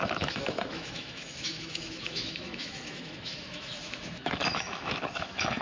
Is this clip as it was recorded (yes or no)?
no